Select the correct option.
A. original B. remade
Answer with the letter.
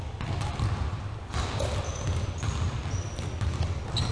A